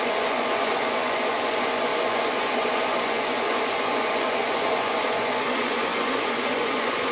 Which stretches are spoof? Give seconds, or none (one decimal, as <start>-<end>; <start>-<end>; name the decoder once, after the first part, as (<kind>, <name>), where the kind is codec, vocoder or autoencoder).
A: 0.0-7.1 (vocoder, Vocos)